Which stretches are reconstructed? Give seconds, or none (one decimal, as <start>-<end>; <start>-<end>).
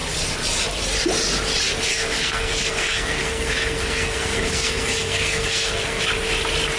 1.9-6.0